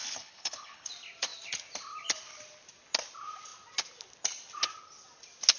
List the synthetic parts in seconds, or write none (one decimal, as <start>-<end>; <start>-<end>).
0.0-0.9